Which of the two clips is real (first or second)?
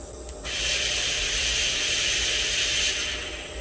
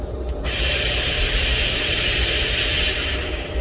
first